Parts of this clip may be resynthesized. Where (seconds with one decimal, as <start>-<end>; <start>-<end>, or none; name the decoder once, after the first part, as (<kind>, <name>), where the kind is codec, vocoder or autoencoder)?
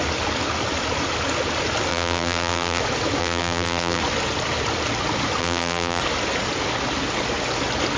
1.9-2.8 (vocoder, BigVGAN v2); 3.2-4.0; 5.4-6.0